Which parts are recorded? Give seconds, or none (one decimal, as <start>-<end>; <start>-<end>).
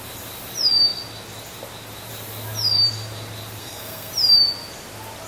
0.0-3.6; 4.1-5.3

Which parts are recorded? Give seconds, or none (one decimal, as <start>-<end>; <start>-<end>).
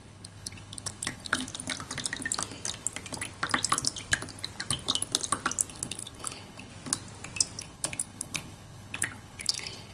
1.5-5.7; 6.7-7.6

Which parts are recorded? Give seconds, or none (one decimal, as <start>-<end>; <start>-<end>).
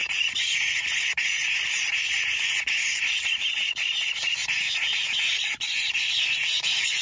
0.0-7.0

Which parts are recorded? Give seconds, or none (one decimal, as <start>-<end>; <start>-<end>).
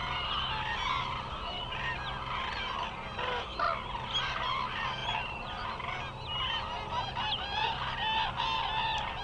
0.0-9.2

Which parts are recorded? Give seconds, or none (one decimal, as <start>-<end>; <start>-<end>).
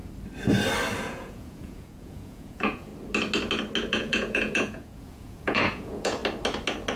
0.0-1.0; 2.9-3.9; 6.2-7.0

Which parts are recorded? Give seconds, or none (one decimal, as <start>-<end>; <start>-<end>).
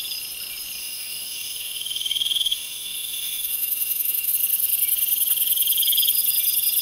0.0-0.8; 4.3-6.8